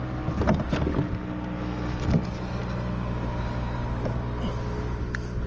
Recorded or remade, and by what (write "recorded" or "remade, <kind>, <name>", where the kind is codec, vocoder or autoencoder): recorded